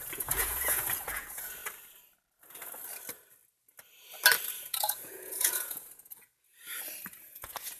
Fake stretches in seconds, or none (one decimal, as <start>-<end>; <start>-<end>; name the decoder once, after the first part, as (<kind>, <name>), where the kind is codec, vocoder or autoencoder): 0.0-1.6 (vocoder, Vocos); 4.6-6.3; 7.2-7.8

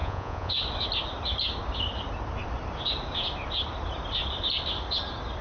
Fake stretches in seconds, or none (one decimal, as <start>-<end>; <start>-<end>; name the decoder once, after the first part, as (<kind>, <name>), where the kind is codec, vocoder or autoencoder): 0.0-0.5 (vocoder, Vocos)

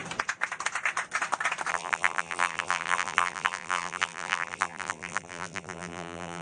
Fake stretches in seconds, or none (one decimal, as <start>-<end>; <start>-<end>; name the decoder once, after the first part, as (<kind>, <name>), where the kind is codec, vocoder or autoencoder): 1.7-6.4 (vocoder, BigVGAN v2)

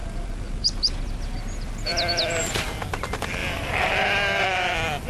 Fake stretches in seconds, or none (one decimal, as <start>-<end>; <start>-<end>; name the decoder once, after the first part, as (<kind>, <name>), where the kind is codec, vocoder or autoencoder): 0.0-1.0 (vocoder, BigVGAN v2); 3.4-4.0

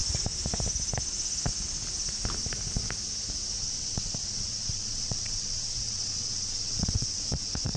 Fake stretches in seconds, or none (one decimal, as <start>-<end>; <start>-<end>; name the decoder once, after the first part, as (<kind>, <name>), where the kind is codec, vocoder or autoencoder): 3.6-7.8 (vocoder, WaveNeXt)

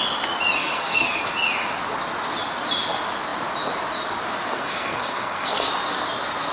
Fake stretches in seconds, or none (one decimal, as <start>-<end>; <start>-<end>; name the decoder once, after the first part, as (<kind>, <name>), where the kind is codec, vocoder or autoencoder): 0.6-1.2 (codec, SNAC); 4.5-5.7

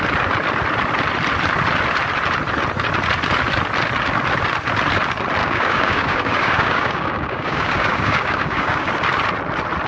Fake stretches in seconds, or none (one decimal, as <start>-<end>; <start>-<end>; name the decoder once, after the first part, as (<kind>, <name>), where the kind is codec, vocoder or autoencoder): 5.4-8.9 (codec, DAC)